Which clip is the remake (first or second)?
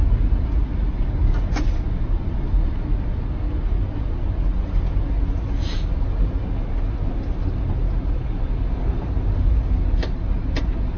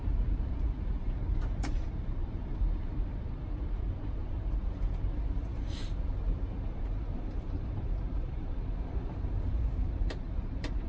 second